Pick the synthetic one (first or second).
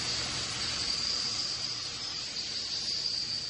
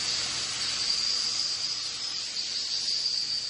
first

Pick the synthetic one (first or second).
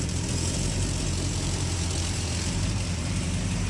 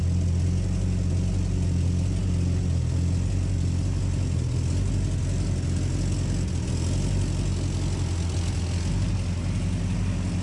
first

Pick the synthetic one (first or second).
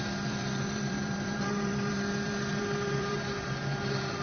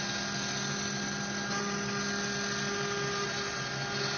first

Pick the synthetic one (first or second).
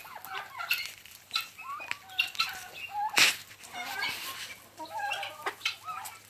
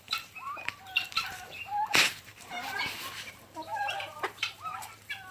second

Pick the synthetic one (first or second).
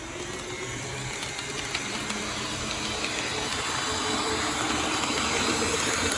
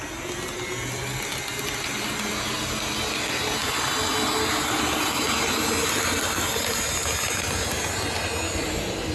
first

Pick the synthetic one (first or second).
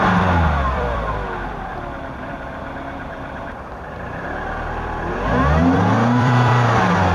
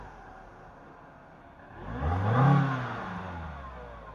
first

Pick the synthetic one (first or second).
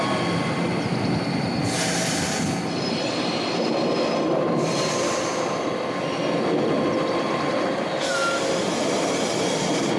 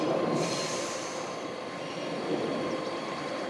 second